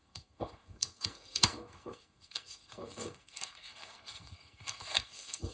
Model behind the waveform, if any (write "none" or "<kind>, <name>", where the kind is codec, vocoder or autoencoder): codec, SNAC